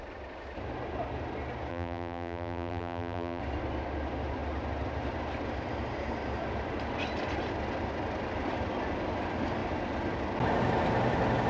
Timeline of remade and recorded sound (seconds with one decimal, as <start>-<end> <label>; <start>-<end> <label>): 0.0-1.7 recorded; 1.7-3.4 remade; 3.4-11.5 recorded